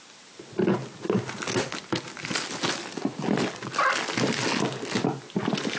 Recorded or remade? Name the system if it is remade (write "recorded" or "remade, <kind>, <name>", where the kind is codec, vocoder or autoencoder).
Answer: recorded